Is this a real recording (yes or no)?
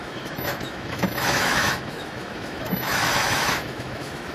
no